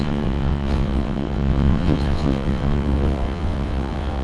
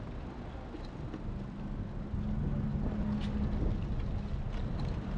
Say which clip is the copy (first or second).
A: first